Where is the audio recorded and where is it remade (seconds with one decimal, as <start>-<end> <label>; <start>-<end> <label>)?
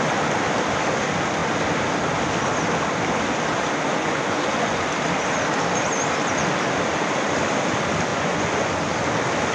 0.0-4.0 recorded; 4.0-4.8 remade; 4.8-8.1 recorded; 8.1-8.7 remade; 8.7-9.5 recorded